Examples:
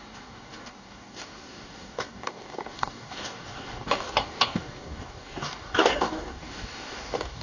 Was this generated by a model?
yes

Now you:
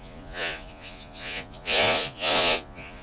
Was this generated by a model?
yes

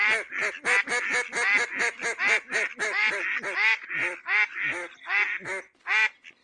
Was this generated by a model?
no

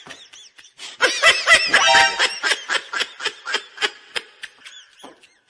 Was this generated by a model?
no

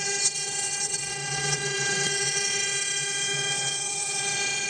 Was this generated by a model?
yes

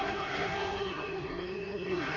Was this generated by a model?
yes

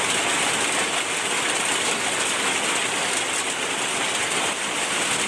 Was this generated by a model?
no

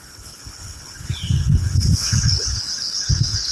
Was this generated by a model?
yes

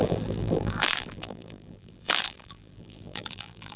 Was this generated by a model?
yes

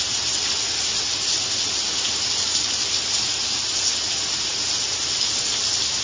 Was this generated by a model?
no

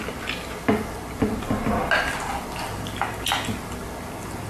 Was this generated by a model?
no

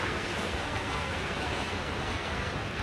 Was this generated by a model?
yes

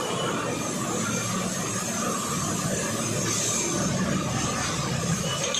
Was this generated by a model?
no